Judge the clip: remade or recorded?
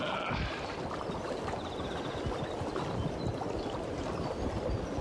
recorded